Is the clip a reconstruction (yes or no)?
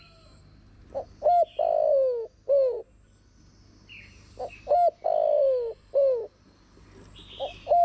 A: no